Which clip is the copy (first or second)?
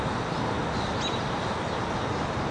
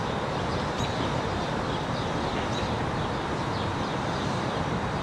second